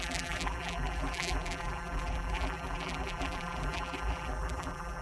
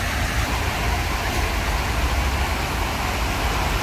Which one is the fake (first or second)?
first